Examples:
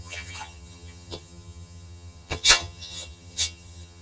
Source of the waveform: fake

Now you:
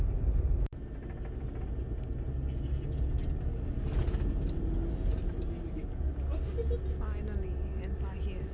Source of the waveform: real